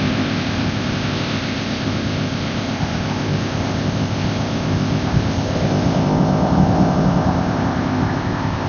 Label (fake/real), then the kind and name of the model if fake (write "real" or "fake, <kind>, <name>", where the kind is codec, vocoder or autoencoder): fake, codec, ZipCodec